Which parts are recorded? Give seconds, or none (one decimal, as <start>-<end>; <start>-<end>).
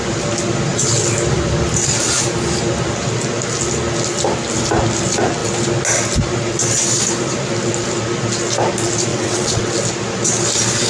0.0-9.1; 9.7-10.9